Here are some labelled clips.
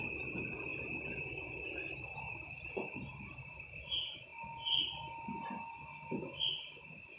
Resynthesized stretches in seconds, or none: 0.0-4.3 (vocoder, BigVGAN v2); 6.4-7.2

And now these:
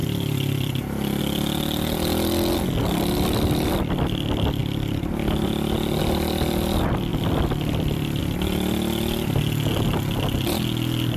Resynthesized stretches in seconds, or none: 0.0-1.2 (vocoder, BigVGAN v2); 7.1-8.2

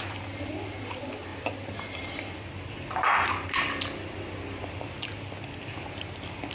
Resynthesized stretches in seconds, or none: none

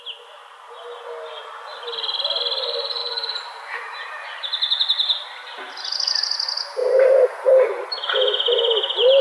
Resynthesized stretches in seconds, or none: 1.7-2.4 (vocoder, BigVGAN v2); 3.0-4.2; 6.8-7.9

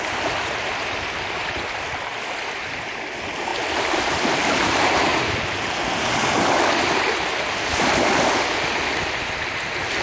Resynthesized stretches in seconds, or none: 0.0-5.1 (vocoder, BigVGAN v2); 8.4-10.0